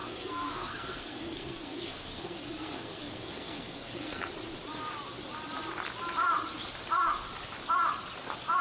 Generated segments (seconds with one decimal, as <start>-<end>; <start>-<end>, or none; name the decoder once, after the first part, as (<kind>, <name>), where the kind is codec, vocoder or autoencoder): 0.0-4.3 (codec, SNAC)